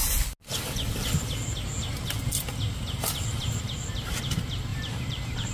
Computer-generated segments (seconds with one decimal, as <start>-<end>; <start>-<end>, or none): 4.7-5.5